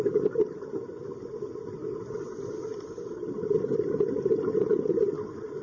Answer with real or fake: real